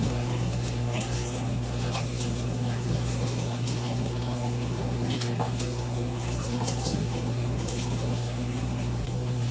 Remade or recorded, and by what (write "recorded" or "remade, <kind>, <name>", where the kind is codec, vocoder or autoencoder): remade, codec, SNAC